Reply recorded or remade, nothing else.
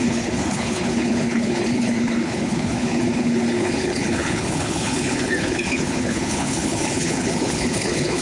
remade